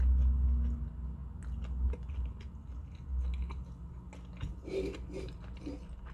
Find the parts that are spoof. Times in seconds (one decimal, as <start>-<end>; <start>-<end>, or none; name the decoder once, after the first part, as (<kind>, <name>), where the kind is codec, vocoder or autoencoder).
none